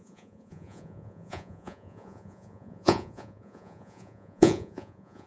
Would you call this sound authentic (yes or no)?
no